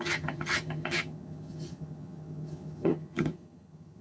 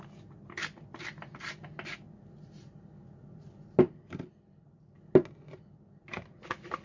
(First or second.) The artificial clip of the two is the first